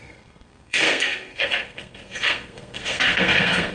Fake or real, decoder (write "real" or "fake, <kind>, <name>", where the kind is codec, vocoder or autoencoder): fake, codec, SNAC